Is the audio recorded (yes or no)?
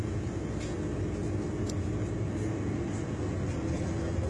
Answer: yes